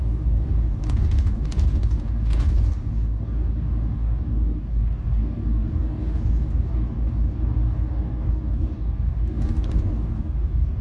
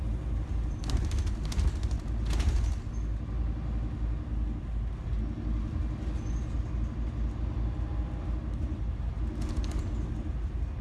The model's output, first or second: first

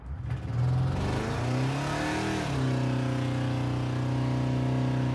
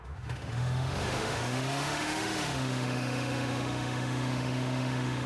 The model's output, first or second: second